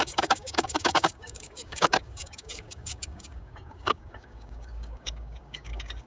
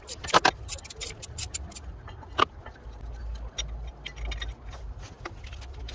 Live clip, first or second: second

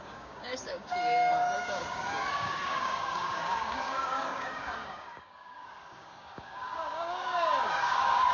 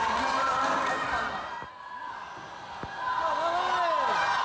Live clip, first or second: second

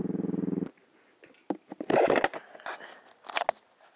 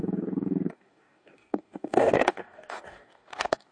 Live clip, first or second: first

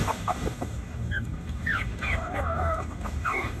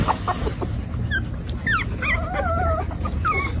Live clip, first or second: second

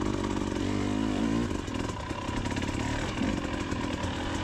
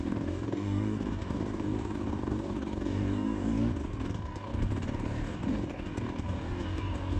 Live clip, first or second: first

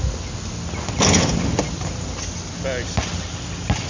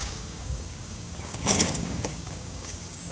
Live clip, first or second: first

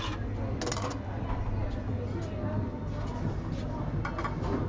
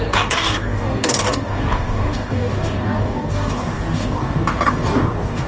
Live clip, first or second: first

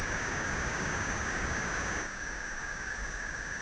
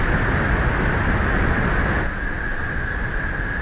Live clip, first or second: second